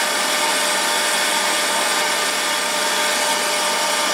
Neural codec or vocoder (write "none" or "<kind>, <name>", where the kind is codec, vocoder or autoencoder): none